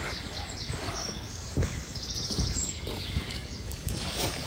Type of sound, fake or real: fake